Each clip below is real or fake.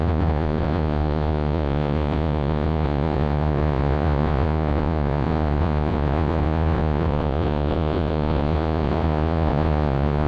fake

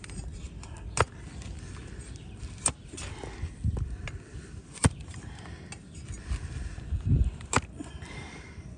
real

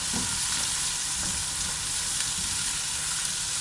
real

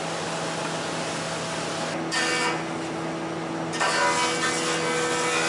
real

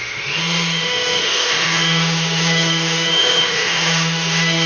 fake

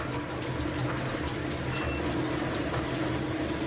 real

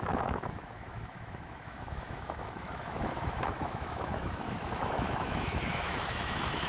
fake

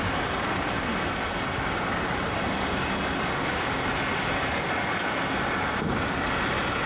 real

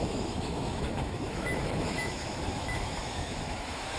fake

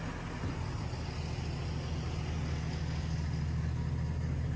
real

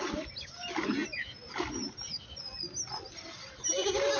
real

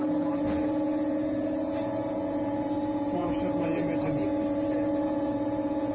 fake